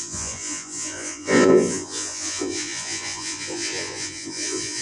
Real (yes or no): no